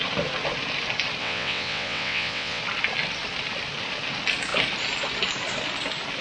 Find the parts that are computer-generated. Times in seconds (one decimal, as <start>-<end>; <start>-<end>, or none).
1.2-2.6